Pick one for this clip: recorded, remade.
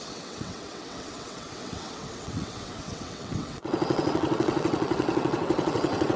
remade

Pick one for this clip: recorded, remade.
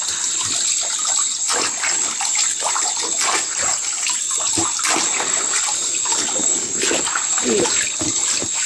recorded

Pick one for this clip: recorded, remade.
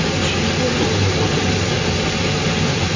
recorded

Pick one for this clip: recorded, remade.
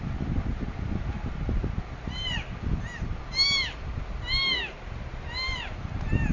recorded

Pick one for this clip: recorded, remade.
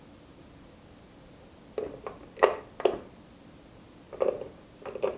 recorded